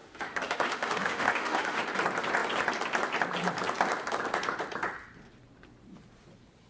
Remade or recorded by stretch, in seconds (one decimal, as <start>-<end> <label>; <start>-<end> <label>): 0.0-1.8 remade; 1.8-6.7 recorded

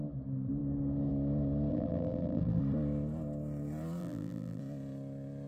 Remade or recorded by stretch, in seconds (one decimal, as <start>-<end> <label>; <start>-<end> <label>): 0.0-1.7 recorded; 1.7-2.6 remade; 2.6-4.0 recorded; 4.0-4.6 remade; 4.6-5.5 recorded

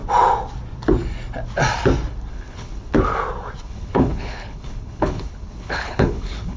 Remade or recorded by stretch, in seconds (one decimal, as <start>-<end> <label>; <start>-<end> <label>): 0.0-2.3 recorded; 2.3-2.9 remade; 2.9-3.6 recorded; 3.6-6.6 remade

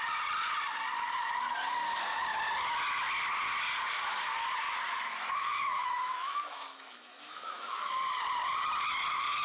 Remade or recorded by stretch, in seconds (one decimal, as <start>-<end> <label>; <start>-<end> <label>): 0.0-5.4 recorded; 5.4-7.9 remade; 7.9-9.4 recorded

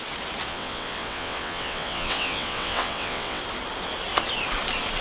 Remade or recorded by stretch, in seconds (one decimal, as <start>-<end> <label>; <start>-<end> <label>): 0.0-0.5 recorded; 0.5-3.4 remade; 3.4-5.0 recorded

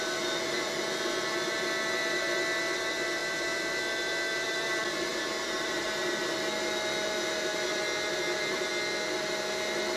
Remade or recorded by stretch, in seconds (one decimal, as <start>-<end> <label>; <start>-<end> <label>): 0.0-10.0 recorded

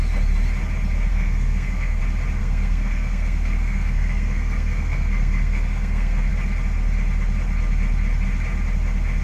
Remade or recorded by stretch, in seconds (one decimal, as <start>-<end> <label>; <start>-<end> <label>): 0.0-1.1 recorded; 1.1-2.0 remade; 2.0-2.4 recorded; 2.4-6.3 remade; 6.3-9.2 recorded